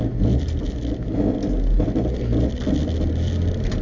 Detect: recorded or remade recorded